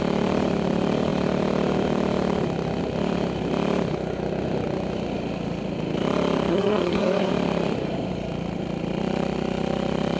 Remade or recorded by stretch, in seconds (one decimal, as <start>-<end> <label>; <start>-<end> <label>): 0.0-6.5 recorded; 6.5-7.3 remade; 7.3-10.2 recorded